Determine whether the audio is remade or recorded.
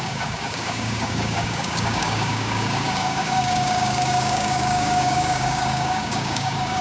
remade